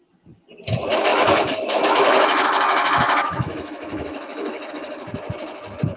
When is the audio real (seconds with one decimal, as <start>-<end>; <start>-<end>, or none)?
0.0-1.1; 4.7-6.0